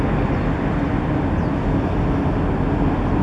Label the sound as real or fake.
real